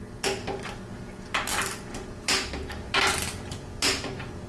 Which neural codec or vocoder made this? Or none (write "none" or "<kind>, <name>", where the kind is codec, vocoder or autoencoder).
none